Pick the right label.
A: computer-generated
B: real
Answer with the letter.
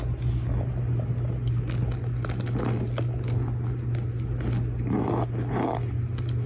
B